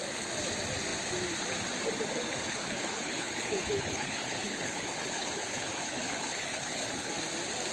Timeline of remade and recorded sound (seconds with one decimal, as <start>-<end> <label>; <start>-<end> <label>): 0.0-2.5 recorded; 2.5-7.1 remade; 7.1-7.7 recorded